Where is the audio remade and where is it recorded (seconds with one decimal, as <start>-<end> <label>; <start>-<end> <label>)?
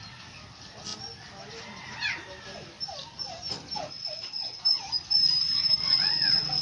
0.0-3.9 recorded; 3.9-4.6 remade; 4.6-5.8 recorded; 5.8-6.6 remade